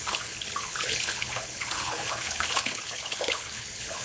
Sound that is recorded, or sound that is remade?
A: remade